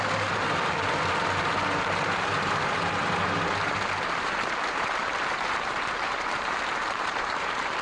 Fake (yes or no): yes